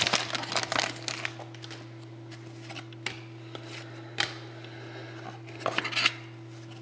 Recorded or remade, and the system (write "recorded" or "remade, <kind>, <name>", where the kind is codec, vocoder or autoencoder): recorded